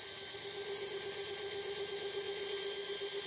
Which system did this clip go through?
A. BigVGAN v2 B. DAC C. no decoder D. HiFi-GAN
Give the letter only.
C